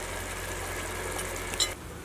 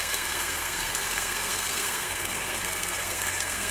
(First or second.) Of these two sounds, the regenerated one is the second